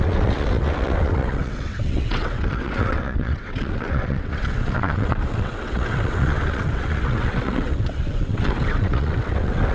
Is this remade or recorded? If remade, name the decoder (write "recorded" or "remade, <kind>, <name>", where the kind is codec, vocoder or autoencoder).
remade, vocoder, WaveNeXt